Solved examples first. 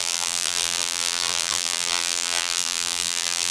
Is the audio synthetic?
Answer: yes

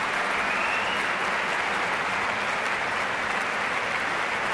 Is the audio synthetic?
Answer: no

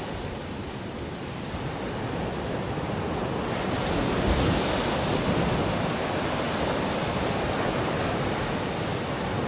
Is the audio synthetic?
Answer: no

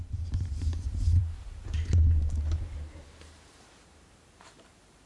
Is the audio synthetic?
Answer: yes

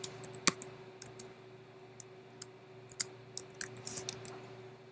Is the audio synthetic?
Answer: no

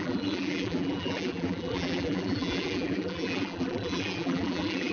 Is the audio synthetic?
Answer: yes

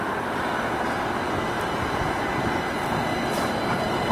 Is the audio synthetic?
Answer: no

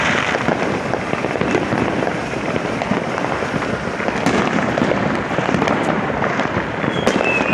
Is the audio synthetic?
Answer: yes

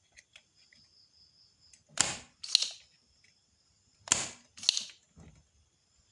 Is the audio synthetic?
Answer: no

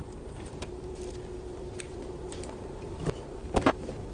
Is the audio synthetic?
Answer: yes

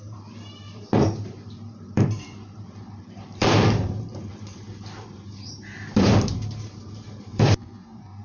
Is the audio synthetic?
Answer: yes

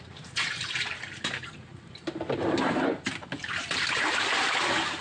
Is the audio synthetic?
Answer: yes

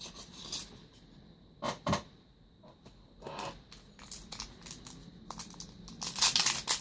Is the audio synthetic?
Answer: no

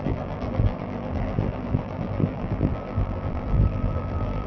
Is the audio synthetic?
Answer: yes